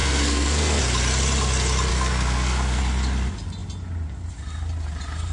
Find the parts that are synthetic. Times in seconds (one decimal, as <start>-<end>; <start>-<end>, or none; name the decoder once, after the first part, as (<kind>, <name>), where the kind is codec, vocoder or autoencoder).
0.0-0.8 (codec, SNAC); 1.9-2.8

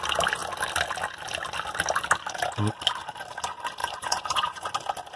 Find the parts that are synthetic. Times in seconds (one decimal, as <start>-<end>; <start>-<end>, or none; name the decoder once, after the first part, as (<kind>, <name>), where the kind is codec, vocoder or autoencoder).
3.8-4.7 (vocoder, Vocos)

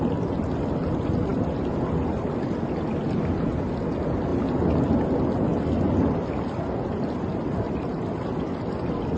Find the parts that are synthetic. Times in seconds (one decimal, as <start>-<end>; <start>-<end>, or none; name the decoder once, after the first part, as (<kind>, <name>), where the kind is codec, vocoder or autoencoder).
none

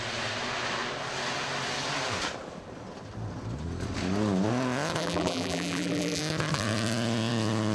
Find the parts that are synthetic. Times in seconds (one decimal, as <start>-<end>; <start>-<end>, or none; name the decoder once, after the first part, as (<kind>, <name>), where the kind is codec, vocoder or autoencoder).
5.0-6.2 (vocoder, BigVGAN v2)

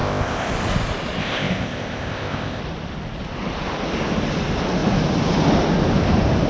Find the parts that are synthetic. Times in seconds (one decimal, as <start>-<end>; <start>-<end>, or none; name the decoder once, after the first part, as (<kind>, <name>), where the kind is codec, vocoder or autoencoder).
0.0-0.5 (codec, ZipCodec); 1.2-2.6